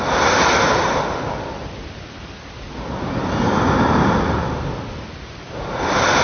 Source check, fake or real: real